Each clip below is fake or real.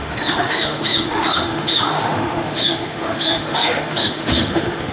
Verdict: fake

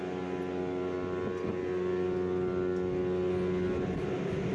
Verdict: real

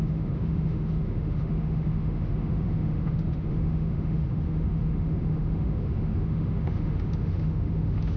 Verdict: fake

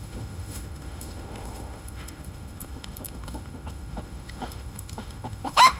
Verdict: fake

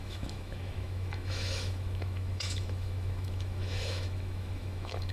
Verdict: fake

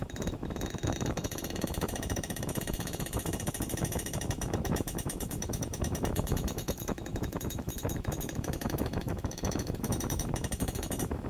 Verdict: fake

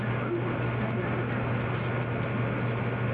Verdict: real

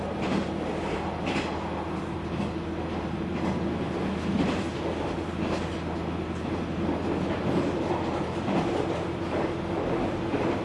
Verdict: real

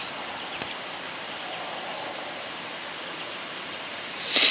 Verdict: real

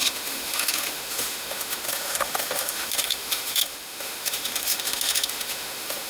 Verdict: fake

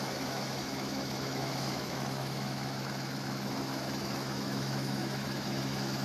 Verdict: fake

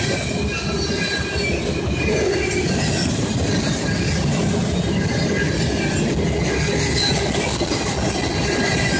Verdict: real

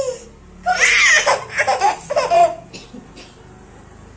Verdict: real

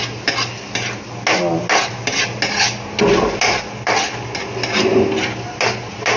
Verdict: real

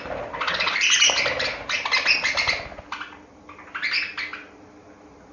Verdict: real